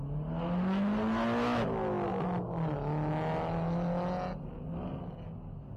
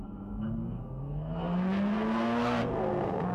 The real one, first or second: first